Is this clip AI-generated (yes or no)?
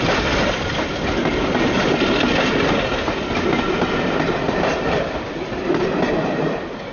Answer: no